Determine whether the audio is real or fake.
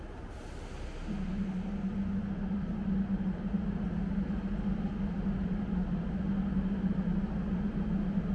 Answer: real